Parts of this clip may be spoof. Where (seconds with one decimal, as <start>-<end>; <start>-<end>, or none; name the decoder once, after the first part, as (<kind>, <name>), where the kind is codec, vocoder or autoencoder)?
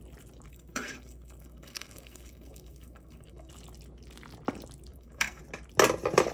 0.5-3.5 (codec, SNAC); 4.9-5.4